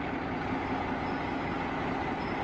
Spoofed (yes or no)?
no